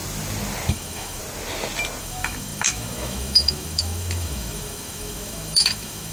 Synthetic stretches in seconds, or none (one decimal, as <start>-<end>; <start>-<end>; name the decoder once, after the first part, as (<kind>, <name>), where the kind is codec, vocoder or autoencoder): 0.7-1.2 (autoencoder, DAC-VAE); 2.0-6.1

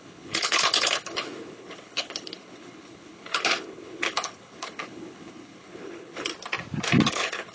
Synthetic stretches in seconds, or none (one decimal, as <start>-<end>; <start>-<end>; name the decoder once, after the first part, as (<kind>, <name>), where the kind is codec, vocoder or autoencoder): 0.0-6.3 (codec, HILCodec); 7.1-7.5